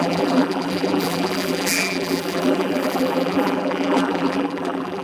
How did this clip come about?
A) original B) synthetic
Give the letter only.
B